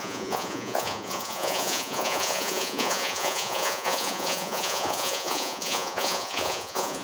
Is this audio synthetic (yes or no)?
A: yes